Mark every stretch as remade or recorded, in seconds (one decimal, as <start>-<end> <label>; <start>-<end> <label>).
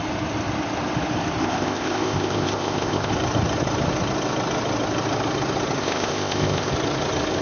0.0-1.4 recorded; 1.4-3.1 remade; 3.1-5.8 recorded; 5.8-6.7 remade; 6.7-7.4 recorded